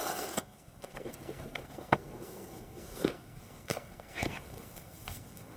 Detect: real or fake fake